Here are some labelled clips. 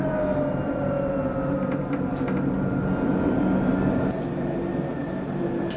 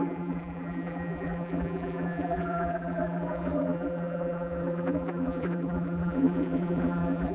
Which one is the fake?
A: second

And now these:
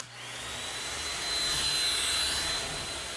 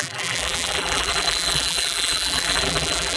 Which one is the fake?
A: second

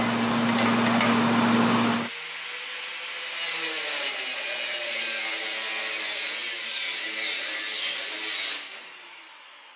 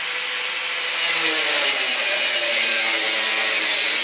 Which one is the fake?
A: second